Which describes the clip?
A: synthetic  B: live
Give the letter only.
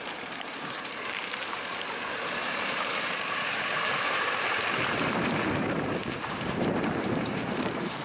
A